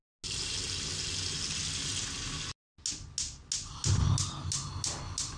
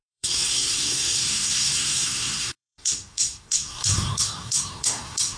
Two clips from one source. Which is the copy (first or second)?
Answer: second